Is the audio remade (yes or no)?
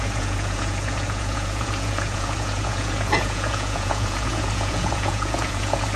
yes